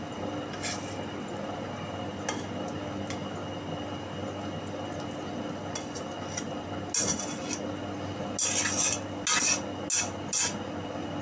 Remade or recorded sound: recorded